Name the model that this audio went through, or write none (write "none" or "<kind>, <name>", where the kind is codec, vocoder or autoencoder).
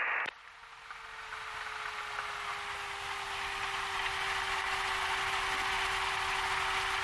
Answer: none